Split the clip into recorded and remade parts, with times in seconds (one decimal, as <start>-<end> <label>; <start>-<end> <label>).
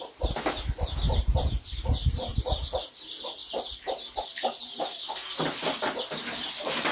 0.0-5.2 recorded; 5.2-5.8 remade; 5.8-6.9 recorded